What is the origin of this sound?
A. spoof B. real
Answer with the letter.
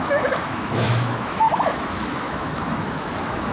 A